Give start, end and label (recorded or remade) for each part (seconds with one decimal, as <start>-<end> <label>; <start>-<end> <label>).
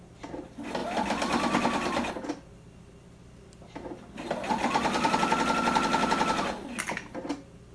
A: 0.0-7.7 recorded